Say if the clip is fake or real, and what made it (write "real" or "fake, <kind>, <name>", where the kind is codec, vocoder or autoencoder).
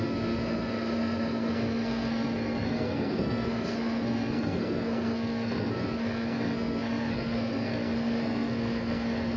fake, codec, SNAC